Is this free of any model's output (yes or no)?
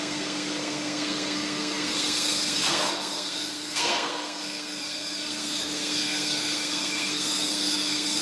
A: no